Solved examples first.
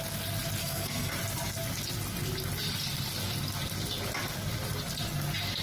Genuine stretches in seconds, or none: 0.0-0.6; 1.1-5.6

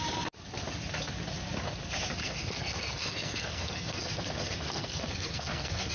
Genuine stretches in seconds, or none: 0.0-2.2

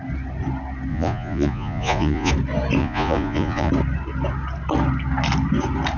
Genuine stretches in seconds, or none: 0.0-0.9; 2.3-2.8; 3.7-6.0

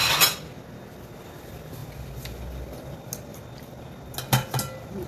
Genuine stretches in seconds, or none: 0.0-5.1

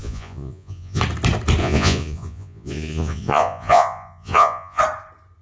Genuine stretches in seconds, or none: 1.0-1.6; 4.8-5.4